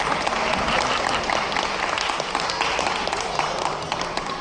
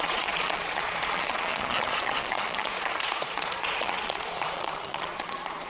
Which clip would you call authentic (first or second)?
first